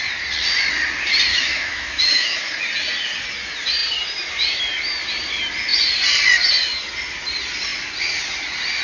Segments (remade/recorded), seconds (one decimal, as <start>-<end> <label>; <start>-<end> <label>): 0.0-1.3 recorded; 1.3-2.5 remade; 2.5-8.8 recorded